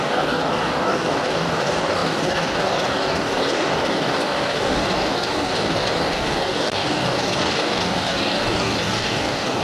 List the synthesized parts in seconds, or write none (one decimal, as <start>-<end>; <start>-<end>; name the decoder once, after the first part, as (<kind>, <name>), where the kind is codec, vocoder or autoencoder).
0.0-9.6 (codec, DAC)